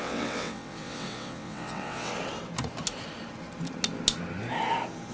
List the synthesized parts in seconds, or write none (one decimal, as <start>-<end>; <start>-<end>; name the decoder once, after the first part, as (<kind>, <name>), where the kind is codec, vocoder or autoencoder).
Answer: 0.0-2.1 (vocoder, WaveNeXt)